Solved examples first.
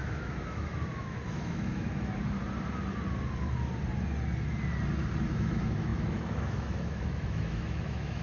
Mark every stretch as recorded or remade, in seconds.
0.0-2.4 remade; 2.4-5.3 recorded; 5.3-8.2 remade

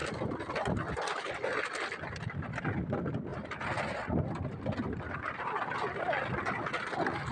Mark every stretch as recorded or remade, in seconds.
0.0-7.3 recorded

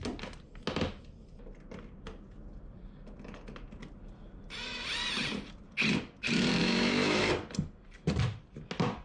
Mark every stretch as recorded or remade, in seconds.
0.0-6.6 recorded; 6.6-7.2 remade; 7.2-9.0 recorded

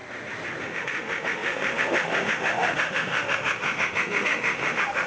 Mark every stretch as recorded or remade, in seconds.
0.0-0.6 recorded; 0.6-5.1 remade

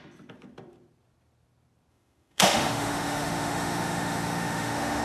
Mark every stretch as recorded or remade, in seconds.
0.0-1.9 recorded; 1.9-5.0 remade

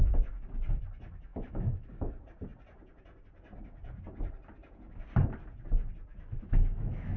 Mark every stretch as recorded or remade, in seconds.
0.0-1.3 recorded; 1.3-1.9 remade; 1.9-6.1 recorded; 6.1-7.2 remade

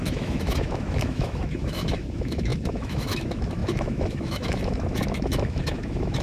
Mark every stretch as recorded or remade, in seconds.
0.0-6.2 remade